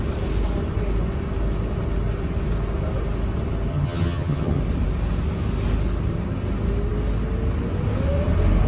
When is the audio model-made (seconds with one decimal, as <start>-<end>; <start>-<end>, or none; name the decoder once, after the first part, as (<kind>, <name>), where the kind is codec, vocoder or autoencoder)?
3.7-4.6 (vocoder, HiFi-GAN)